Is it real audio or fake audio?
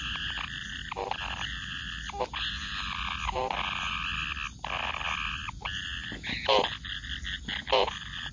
real